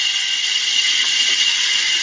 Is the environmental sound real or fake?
real